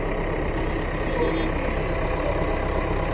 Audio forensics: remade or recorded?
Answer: recorded